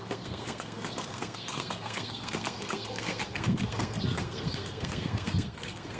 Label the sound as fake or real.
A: fake